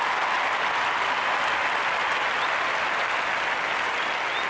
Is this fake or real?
real